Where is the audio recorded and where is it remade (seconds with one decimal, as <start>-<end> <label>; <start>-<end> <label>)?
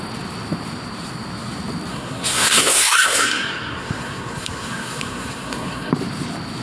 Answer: 0.0-1.9 recorded; 1.9-5.9 remade; 5.9-6.6 recorded